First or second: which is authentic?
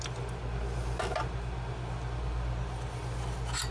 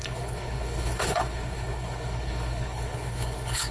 first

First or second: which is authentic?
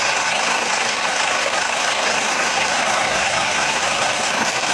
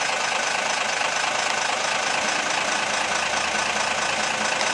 second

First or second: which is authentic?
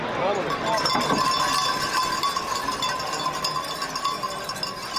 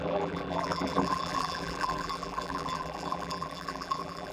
first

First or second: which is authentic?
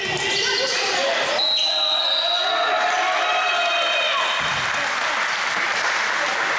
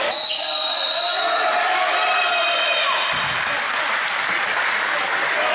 first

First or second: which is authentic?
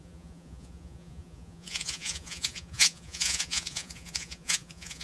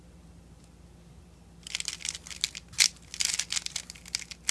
second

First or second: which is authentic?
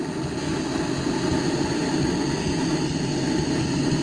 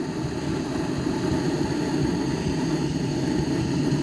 first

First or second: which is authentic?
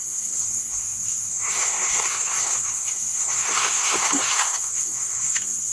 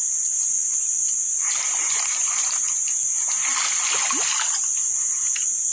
second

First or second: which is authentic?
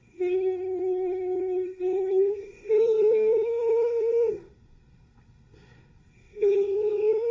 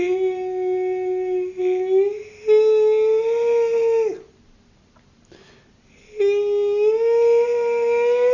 second